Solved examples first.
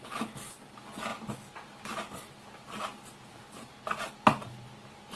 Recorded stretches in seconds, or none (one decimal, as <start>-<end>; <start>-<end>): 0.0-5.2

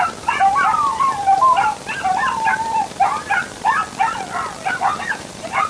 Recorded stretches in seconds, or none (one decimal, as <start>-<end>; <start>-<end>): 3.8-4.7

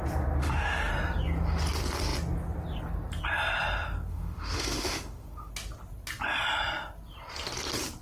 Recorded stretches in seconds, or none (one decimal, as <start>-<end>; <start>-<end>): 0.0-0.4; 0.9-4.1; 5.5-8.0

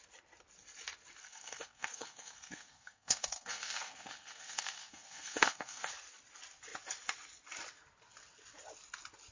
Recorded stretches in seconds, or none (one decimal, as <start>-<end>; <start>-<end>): 0.0-1.2; 5.9-9.3

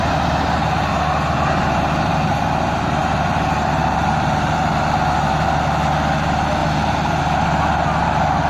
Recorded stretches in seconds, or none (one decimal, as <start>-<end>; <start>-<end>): 0.0-3.0; 4.7-6.6; 7.2-8.5

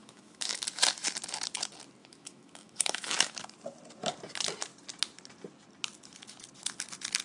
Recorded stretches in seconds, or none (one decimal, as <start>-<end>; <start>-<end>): 0.6-2.0; 3.4-7.2

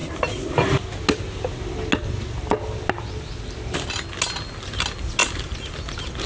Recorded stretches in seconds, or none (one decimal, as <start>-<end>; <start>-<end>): 0.0-6.3